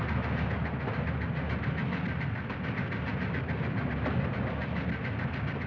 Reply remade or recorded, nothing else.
recorded